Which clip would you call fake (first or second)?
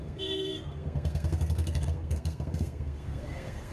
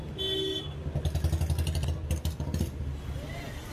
first